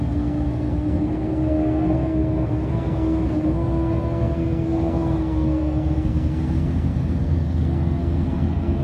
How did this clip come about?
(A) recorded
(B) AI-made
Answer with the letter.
B